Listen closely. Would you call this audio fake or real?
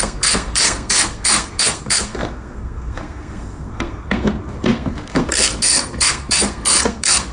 fake